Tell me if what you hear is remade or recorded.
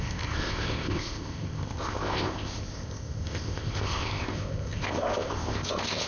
remade